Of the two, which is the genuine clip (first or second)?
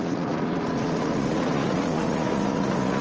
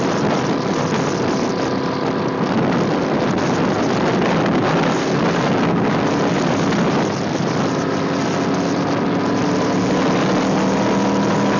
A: second